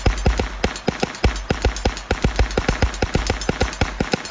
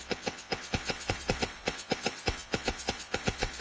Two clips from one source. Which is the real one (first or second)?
first